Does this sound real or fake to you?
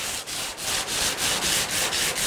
real